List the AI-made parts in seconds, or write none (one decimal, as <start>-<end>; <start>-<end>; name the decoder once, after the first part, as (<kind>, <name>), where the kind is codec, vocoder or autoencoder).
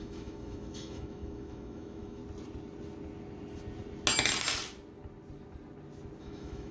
0.0-2.2 (autoencoder, DAC-VAE); 6.2-6.7